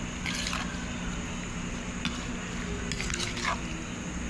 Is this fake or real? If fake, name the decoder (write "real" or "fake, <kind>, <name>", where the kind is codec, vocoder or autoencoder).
real